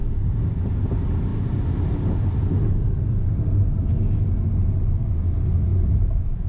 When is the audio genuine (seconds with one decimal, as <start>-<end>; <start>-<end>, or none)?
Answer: 0.0-5.7